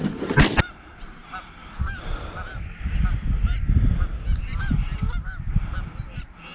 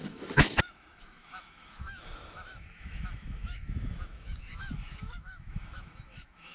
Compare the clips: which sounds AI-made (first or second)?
second